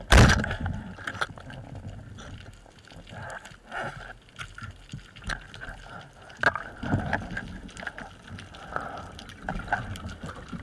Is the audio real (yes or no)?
yes